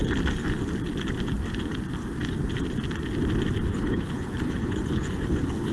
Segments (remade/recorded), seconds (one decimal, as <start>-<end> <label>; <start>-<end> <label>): 0.0-3.7 recorded; 3.7-5.7 remade